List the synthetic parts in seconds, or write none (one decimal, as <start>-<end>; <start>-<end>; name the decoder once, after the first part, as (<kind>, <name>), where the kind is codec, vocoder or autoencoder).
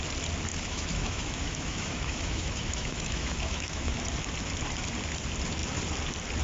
0.5-4.0 (autoencoder, DAC-VAE)